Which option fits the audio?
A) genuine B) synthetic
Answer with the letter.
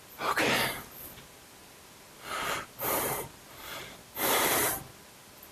A